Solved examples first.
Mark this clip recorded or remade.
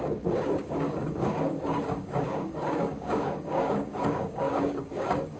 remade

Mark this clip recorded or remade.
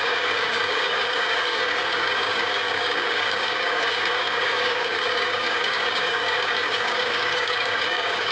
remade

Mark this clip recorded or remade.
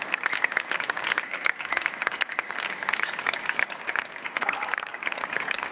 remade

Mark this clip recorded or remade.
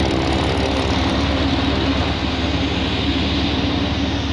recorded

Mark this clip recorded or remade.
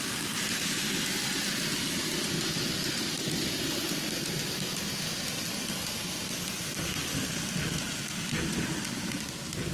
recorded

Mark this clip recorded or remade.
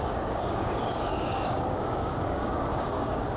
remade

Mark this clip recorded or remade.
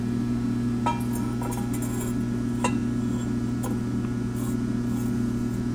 recorded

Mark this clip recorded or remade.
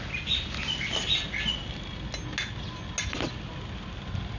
recorded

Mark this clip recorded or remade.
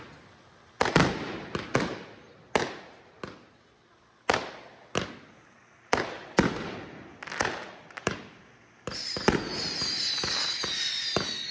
recorded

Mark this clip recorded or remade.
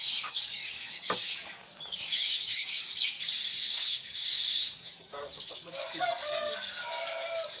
remade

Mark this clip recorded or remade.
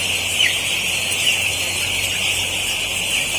recorded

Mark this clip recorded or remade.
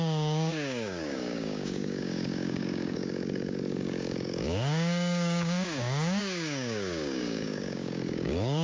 remade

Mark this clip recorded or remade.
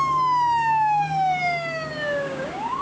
remade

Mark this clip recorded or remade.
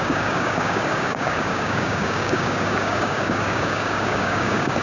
remade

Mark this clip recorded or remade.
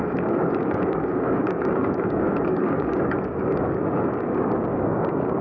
remade